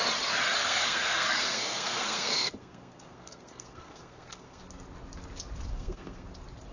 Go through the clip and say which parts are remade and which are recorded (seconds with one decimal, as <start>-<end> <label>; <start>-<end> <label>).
0.0-0.6 recorded; 0.6-4.6 remade; 4.6-5.7 recorded; 5.7-6.3 remade; 6.3-6.7 recorded